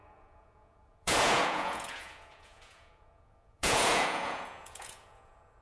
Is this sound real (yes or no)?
no